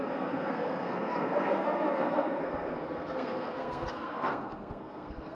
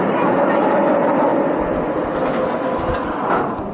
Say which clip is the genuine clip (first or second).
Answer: second